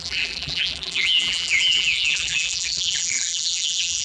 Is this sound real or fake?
fake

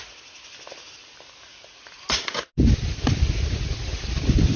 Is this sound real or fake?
real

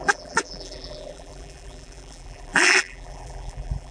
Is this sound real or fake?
fake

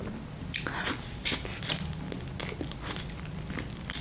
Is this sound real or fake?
real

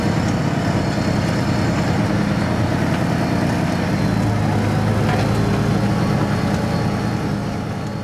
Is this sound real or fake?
real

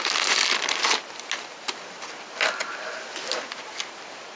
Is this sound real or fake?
real